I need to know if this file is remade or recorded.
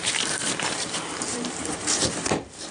remade